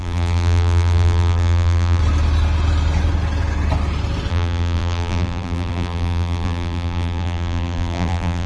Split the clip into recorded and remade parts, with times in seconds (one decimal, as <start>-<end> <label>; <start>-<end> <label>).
0.0-2.0 remade; 2.0-4.3 recorded; 4.3-8.5 remade